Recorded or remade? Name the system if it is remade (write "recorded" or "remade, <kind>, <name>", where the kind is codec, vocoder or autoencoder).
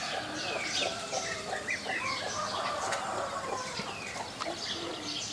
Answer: remade, vocoder, BigVGAN v2